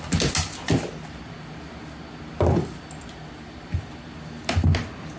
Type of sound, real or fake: real